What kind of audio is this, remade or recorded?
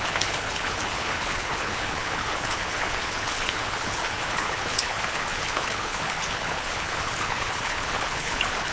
remade